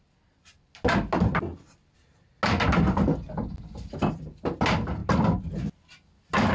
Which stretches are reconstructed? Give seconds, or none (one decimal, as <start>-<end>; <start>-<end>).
none